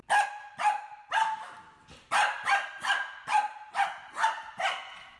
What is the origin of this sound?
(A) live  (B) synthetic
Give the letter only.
A